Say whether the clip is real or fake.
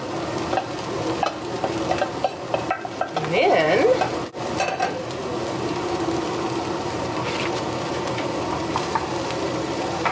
fake